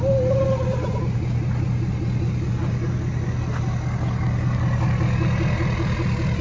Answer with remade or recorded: recorded